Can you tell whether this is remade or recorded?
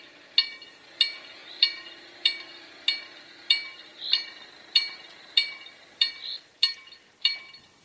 remade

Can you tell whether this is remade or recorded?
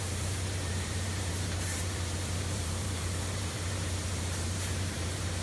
remade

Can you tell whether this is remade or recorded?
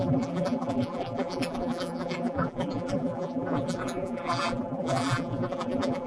remade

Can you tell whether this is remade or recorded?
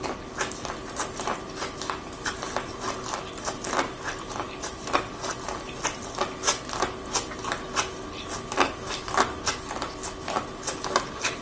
recorded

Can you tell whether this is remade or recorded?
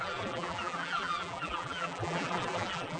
remade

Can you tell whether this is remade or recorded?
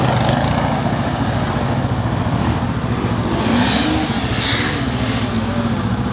recorded